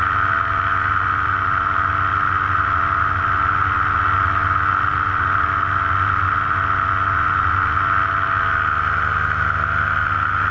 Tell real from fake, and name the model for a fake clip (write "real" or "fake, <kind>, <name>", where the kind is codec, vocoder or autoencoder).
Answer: real